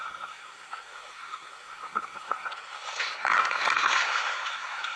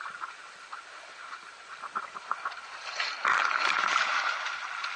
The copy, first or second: first